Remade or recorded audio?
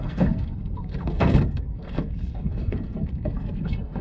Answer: remade